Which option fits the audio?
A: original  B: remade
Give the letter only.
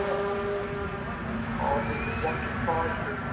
A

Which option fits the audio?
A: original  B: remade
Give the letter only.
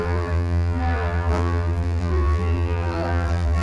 B